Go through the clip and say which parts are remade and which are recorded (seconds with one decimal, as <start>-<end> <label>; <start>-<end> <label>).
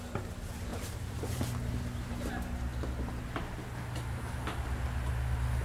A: 0.0-0.7 recorded; 0.7-1.4 remade; 1.4-5.6 recorded